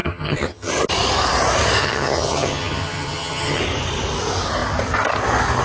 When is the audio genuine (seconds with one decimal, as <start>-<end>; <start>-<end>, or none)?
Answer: 0.7-1.8; 3.6-5.6

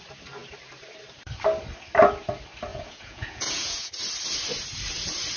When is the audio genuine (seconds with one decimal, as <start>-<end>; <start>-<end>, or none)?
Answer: 0.0-2.7; 3.9-5.4

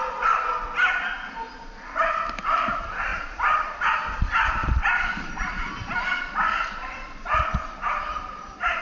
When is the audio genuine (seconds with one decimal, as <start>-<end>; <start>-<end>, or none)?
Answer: none

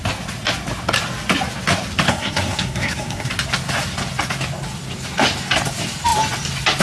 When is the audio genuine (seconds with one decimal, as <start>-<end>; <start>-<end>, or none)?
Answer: 0.0-2.1; 3.3-6.8

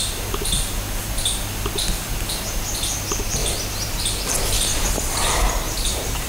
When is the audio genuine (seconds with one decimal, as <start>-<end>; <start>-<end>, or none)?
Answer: 0.0-3.4; 4.0-4.7

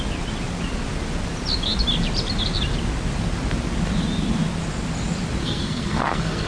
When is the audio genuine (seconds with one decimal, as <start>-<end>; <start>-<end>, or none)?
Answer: 0.0-5.4

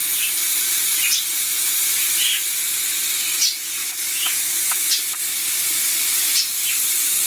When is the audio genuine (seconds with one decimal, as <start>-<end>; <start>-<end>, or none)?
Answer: 0.0-3.8; 4.9-7.3